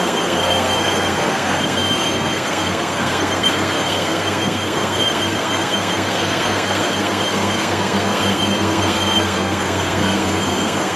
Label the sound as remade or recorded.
remade